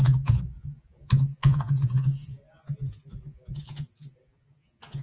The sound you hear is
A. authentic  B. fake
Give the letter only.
B